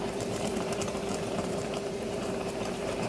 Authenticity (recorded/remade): remade